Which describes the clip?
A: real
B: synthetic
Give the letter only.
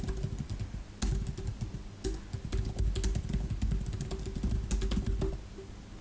A